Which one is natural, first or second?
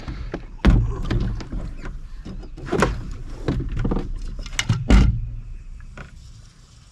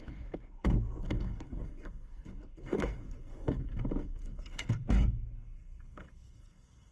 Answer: first